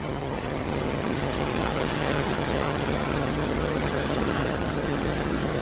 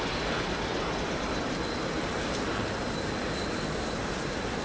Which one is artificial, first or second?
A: first